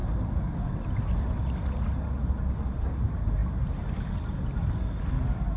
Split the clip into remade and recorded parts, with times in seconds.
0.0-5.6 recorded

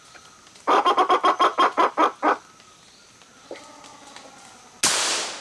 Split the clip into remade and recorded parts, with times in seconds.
0.0-5.4 recorded

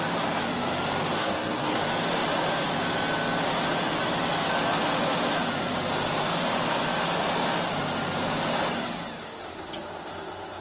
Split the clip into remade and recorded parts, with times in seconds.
0.0-1.2 recorded; 1.2-1.8 remade; 1.8-10.6 recorded

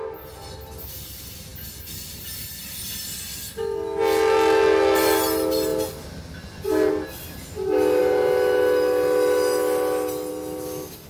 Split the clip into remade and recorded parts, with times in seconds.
0.0-11.1 recorded

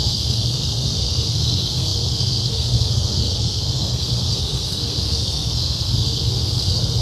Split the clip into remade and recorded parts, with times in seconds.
0.0-7.0 remade